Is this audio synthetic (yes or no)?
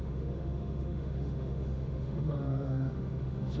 yes